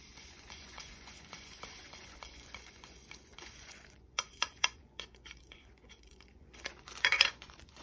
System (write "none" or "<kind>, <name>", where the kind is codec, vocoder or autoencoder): vocoder, Vocos